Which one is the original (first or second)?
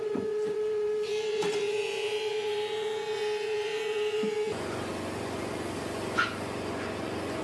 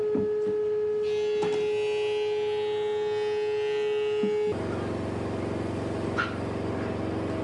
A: second